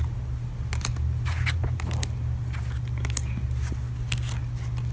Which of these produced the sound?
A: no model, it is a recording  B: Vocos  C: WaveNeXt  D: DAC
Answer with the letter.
A